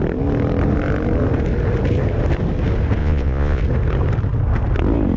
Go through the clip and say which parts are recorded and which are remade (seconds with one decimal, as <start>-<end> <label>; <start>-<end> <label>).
0.0-3.0 recorded; 3.0-3.6 remade; 3.6-5.2 recorded